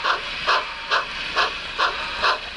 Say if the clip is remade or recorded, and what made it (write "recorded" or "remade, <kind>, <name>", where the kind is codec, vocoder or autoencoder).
recorded